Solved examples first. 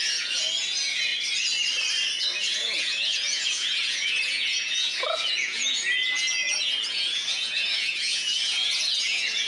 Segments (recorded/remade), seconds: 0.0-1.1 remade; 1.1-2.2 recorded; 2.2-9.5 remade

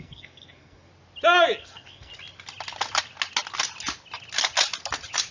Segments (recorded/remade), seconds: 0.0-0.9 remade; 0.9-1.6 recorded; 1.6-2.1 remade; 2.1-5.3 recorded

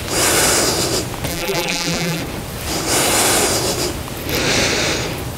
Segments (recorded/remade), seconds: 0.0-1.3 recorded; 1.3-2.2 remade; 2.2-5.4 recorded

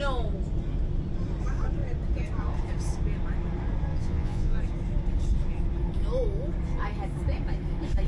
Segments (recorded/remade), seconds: 0.0-3.9 recorded; 3.9-4.6 remade; 4.6-8.1 recorded

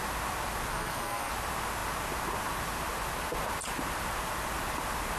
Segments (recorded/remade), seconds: 0.0-0.7 recorded; 0.7-1.3 remade; 1.3-5.2 recorded

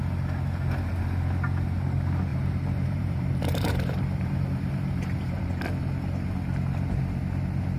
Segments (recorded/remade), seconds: 0.0-2.3 recorded; 2.3-5.4 remade; 5.4-7.8 recorded

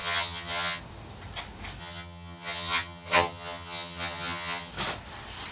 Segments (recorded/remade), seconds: 0.0-0.8 remade; 0.8-1.8 recorded; 1.8-4.7 remade; 4.7-5.5 recorded